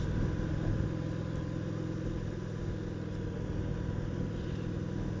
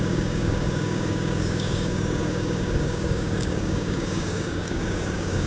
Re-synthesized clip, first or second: second